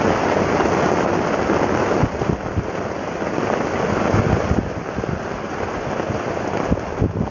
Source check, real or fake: real